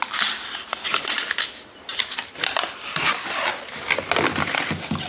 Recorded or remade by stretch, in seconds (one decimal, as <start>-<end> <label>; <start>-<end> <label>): 0.0-5.1 recorded